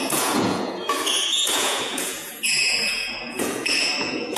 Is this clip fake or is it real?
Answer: fake